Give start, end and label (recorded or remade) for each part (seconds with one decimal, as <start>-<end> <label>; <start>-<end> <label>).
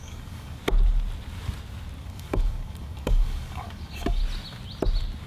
0.0-0.6 remade; 0.6-2.0 recorded; 2.0-4.2 remade; 4.2-5.3 recorded